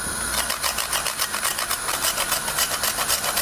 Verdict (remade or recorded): recorded